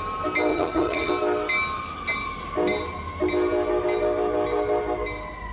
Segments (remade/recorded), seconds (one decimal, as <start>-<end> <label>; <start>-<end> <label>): 0.0-0.5 recorded; 0.5-1.1 remade; 1.1-5.5 recorded